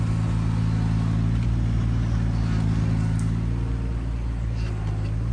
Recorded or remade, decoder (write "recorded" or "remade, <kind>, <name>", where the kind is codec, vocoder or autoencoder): recorded